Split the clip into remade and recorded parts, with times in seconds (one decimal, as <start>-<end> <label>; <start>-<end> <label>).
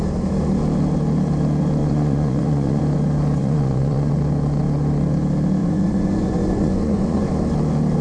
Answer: 0.0-1.8 recorded; 1.8-2.8 remade; 2.8-3.4 recorded; 3.4-4.1 remade; 4.1-5.6 recorded; 5.6-7.3 remade; 7.3-8.0 recorded